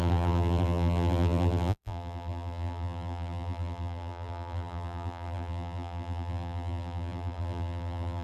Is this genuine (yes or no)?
no